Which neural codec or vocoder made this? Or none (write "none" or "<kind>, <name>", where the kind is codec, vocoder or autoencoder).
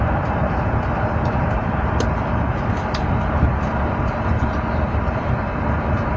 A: vocoder, BigVGAN v2